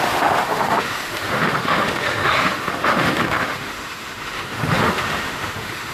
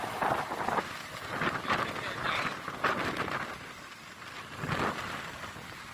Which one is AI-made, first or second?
first